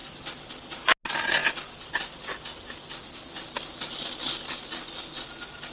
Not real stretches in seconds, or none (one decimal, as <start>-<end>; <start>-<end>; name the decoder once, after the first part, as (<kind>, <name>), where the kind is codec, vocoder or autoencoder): 0.0-0.9 (vocoder, BigVGAN v2); 1.4-1.9